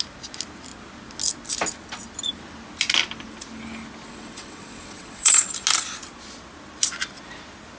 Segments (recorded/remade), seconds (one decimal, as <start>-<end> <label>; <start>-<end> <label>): 0.0-4.1 recorded; 4.1-5.5 remade; 5.5-7.8 recorded